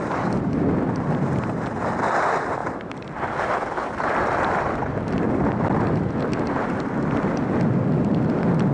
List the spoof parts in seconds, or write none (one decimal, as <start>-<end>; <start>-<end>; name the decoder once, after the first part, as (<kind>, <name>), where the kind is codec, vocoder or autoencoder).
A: none